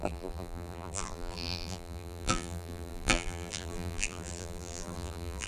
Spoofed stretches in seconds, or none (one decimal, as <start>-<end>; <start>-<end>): 0.0-5.5